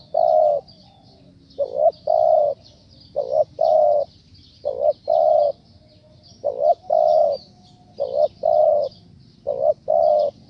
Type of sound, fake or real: real